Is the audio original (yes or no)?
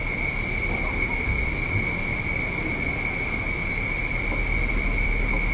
yes